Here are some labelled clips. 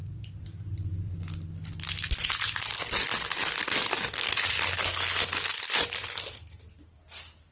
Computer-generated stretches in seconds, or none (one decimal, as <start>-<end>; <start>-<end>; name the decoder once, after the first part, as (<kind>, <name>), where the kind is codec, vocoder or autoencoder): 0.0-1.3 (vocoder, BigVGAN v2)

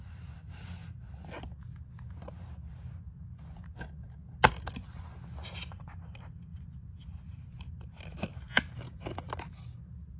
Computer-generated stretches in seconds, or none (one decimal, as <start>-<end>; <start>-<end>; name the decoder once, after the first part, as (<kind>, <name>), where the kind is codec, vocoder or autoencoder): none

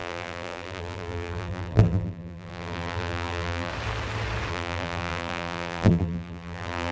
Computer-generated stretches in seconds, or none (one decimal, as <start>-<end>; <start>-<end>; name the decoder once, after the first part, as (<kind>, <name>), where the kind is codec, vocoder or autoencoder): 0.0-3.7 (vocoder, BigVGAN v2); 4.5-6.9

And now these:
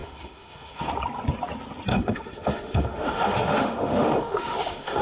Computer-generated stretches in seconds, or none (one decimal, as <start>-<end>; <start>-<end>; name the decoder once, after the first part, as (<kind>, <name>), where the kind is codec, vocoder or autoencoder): 0.0-0.9 (autoencoder, DAC-VAE); 1.9-5.0

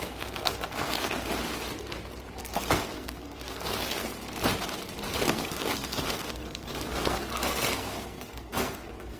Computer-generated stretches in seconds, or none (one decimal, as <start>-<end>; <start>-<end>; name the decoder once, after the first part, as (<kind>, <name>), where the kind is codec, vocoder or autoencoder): 0.0-1.3 (codec, SNAC); 2.4-4.1; 5.1-9.2

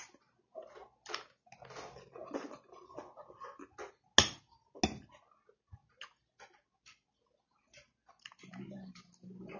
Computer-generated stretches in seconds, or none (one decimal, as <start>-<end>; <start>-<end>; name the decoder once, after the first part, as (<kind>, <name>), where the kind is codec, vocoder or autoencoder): none

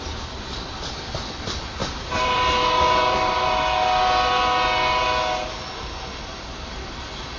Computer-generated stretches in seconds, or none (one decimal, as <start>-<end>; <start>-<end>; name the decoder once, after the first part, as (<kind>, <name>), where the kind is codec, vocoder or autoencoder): 1.8-3.5 (vocoder, BigVGAN v2)

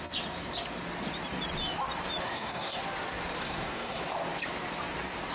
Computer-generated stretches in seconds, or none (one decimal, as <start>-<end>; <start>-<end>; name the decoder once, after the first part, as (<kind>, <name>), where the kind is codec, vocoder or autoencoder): 2.2-2.8 (codec, SNAC); 3.4-4.0